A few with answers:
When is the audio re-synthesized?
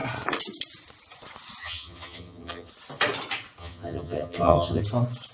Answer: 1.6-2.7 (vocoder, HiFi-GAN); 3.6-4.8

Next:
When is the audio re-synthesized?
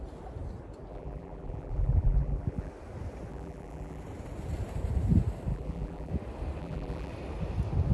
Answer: 0.9-2.7 (vocoder, BigVGAN v2); 3.3-4.0; 5.5-6.1; 6.6-7.1